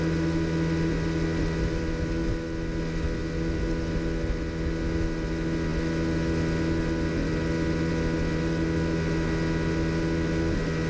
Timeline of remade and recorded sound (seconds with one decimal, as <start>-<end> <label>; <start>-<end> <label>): 0.0-10.9 recorded